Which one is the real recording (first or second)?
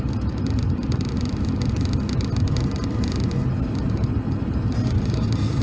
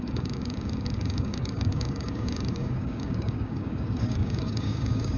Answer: first